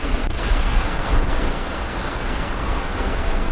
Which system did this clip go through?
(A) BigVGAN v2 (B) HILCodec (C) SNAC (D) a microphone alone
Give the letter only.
C